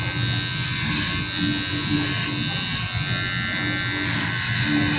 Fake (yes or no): no